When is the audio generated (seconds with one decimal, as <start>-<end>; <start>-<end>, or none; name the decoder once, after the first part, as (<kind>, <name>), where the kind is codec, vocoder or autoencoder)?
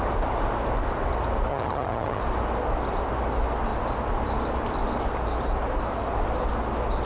1.5-2.2 (vocoder, HiFi-GAN)